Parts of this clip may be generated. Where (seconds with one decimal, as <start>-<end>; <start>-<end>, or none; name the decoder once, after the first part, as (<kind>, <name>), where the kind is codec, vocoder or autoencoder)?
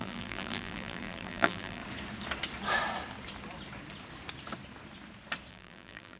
0.0-1.8 (vocoder, BigVGAN v2); 5.5-6.2